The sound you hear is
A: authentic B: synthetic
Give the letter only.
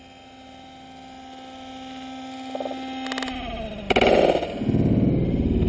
A